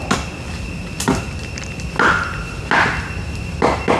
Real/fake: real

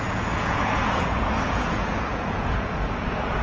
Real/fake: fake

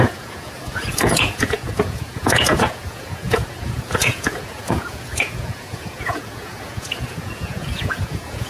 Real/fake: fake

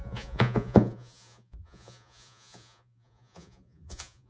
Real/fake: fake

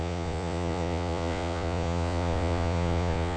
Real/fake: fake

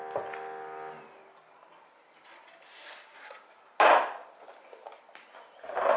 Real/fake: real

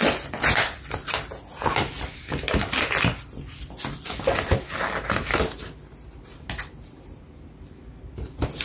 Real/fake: real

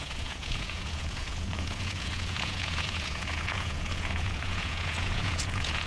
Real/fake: fake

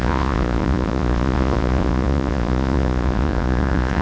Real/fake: fake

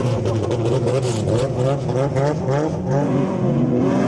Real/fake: fake